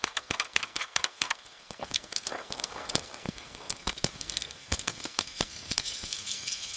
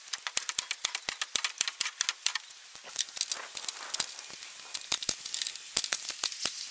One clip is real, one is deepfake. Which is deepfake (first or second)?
first